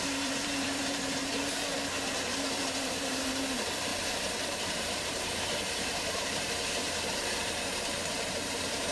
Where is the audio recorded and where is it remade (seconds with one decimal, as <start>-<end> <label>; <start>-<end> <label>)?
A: 0.0-8.9 remade